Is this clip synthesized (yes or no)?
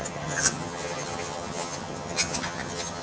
yes